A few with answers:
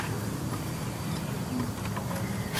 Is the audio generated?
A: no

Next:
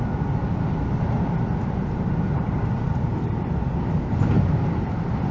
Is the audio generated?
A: no